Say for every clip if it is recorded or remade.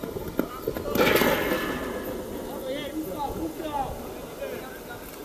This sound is recorded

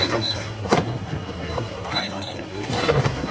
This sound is remade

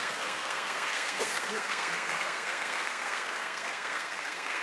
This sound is remade